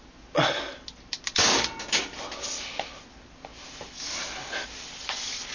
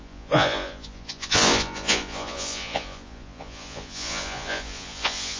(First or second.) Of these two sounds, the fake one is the second